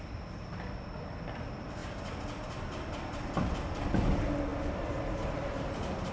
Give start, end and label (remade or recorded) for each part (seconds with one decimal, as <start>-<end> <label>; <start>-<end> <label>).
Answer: 0.0-6.1 recorded